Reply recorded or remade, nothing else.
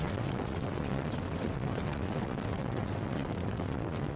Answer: remade